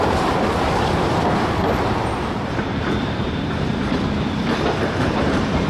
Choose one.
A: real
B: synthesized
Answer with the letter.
B